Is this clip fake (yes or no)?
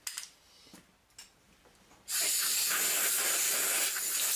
no